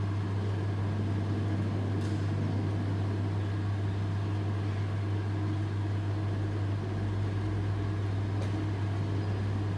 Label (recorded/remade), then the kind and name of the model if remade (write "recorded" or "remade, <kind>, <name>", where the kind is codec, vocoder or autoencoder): recorded